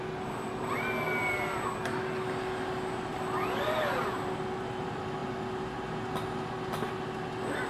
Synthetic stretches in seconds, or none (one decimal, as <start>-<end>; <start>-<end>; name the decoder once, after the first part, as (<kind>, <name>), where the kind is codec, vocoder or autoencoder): none